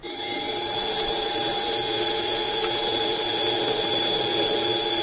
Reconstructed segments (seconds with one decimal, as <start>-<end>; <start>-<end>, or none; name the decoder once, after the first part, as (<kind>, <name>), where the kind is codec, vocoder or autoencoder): 0.0-3.0 (vocoder, Vocos)